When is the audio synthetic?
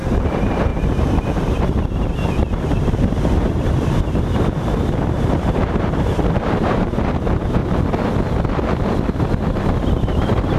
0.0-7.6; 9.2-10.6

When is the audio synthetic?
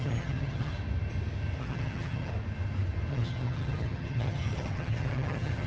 0.0-0.7; 1.6-2.3; 3.1-5.7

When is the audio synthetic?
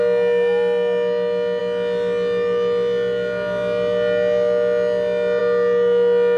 none